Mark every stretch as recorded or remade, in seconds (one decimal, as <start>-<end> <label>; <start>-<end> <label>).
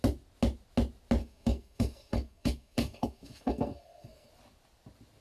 0.0-1.2 recorded; 1.2-4.3 remade; 4.3-5.2 recorded